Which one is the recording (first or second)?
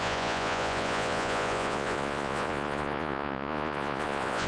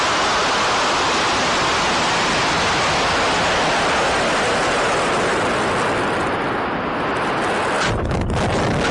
second